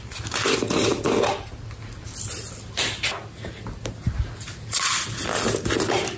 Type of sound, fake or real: real